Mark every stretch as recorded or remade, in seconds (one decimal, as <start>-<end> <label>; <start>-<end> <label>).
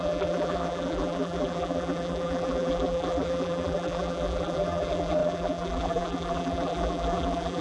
0.0-7.6 remade